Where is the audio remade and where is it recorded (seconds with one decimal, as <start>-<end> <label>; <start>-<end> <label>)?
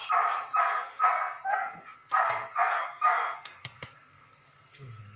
0.0-0.6 recorded; 0.6-5.2 remade